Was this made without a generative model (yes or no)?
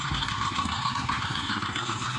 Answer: no